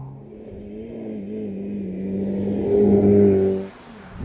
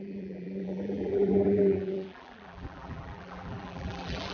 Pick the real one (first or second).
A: first